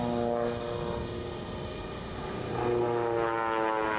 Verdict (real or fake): real